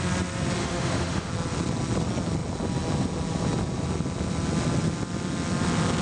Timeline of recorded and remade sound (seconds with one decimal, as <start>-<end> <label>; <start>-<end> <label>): 0.0-0.6 recorded; 0.6-1.3 remade; 1.3-6.0 recorded